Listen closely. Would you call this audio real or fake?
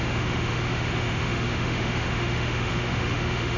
fake